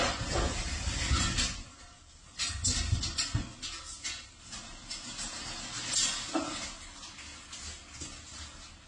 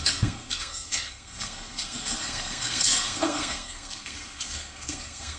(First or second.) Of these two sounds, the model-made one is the second